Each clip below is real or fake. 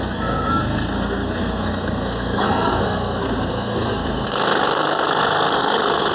fake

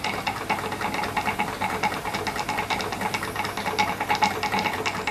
real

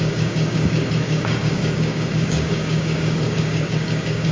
fake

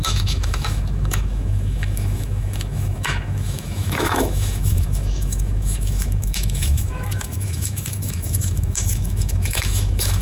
fake